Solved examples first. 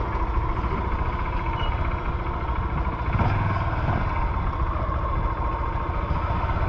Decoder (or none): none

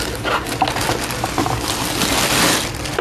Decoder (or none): none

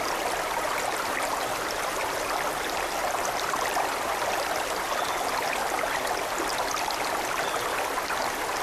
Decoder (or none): none